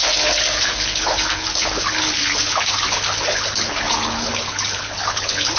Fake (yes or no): yes